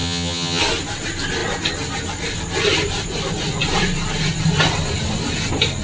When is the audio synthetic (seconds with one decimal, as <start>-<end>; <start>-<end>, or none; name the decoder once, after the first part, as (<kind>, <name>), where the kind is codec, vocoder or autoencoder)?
0.0-0.6 (vocoder, HiFi-GAN)